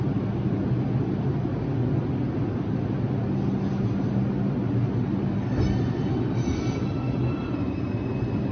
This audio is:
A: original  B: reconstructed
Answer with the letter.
A